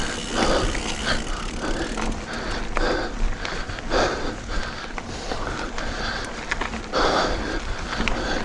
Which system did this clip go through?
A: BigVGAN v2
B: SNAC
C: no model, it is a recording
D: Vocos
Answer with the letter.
C